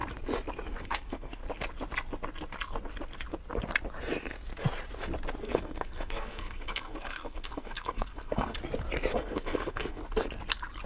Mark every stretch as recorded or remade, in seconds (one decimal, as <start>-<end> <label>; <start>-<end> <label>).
0.0-0.8 recorded; 0.8-1.4 remade; 1.4-5.4 recorded; 5.4-8.6 remade; 8.6-9.1 recorded; 9.1-10.0 remade; 10.0-10.9 recorded